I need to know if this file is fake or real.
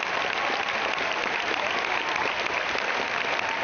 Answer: fake